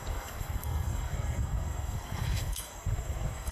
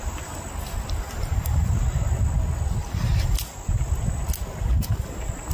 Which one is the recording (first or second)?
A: second